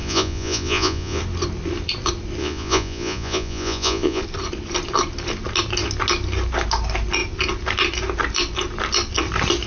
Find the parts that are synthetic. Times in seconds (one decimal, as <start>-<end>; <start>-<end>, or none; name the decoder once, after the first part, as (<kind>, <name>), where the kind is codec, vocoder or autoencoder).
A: 0.0-1.2 (vocoder, Vocos); 2.4-4.2